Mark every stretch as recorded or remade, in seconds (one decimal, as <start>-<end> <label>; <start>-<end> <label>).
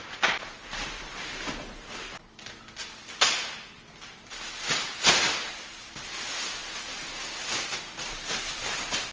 0.0-9.1 recorded